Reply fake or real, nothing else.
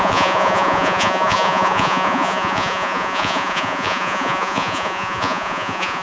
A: fake